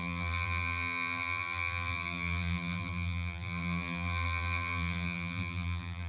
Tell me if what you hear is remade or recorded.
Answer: remade